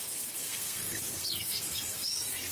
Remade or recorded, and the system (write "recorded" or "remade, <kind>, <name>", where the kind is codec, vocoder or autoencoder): remade, codec, SNAC